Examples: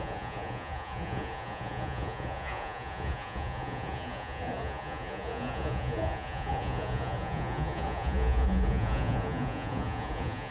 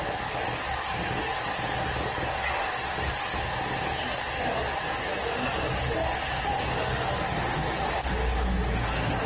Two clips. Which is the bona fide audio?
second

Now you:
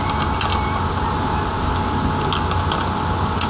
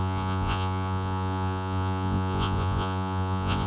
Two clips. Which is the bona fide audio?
first